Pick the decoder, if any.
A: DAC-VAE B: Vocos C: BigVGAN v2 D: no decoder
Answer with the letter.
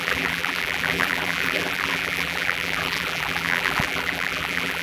C